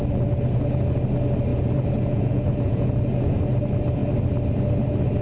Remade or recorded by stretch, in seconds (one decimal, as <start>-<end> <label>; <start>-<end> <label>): 0.0-1.5 recorded; 1.5-3.4 remade; 3.4-5.2 recorded